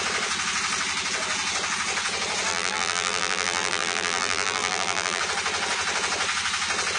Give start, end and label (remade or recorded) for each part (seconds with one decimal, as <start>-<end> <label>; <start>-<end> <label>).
0.0-2.5 recorded; 2.5-5.2 remade; 5.2-7.0 recorded